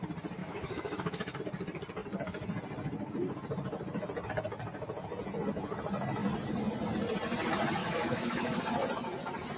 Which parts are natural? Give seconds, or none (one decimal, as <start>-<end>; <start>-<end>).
0.0-0.4; 1.4-7.8; 8.6-9.6